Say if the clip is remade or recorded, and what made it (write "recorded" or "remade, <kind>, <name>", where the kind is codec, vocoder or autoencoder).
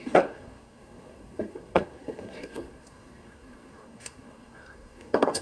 remade, codec, SNAC